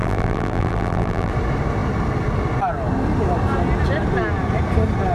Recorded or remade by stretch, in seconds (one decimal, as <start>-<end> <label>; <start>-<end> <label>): 0.0-1.3 remade; 1.3-5.1 recorded